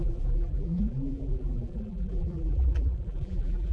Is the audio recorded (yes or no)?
no